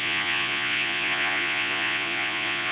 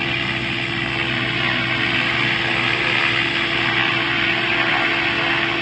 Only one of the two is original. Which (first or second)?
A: second